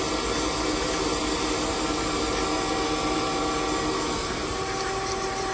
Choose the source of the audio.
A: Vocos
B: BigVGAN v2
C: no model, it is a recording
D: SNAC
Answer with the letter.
C